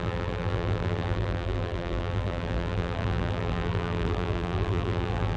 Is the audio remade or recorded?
remade